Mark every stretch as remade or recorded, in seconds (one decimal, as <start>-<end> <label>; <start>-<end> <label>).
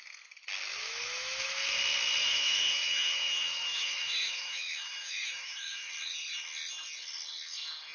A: 0.0-0.7 recorded; 0.7-1.8 remade; 1.8-2.2 recorded; 2.2-5.9 remade; 5.9-7.9 recorded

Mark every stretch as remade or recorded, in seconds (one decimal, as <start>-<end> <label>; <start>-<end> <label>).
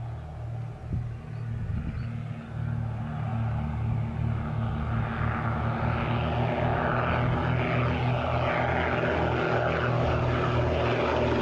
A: 0.0-11.4 recorded